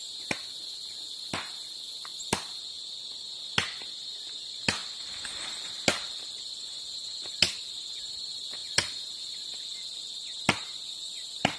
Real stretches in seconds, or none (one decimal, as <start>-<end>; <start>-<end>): 0.0-11.6